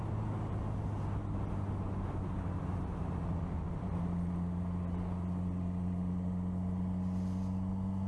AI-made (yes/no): no